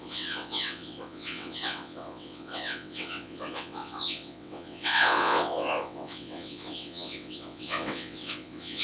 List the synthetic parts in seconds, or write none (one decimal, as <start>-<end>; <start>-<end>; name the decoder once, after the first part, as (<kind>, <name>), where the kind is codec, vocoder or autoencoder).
0.0-8.8 (vocoder, WaveNeXt)